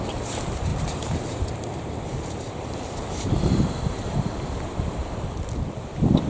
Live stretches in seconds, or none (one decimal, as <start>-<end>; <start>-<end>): 0.7-1.6